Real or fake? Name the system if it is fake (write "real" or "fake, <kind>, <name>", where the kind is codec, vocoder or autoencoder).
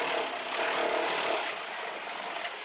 real